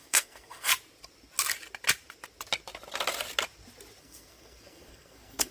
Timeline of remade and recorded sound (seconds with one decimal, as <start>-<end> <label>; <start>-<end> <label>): 0.0-0.7 remade; 0.7-4.0 recorded; 4.0-5.5 remade